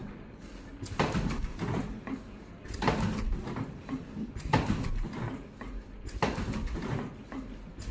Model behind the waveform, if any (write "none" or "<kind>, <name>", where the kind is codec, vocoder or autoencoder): none